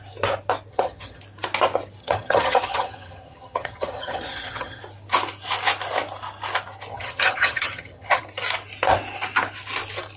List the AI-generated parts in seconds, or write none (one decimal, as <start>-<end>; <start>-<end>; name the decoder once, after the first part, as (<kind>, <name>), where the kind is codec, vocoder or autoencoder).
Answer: 0.7-1.2 (vocoder, HiFi-GAN); 2.0-4.8; 6.9-8.2